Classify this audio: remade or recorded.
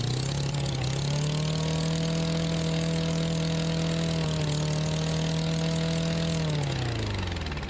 recorded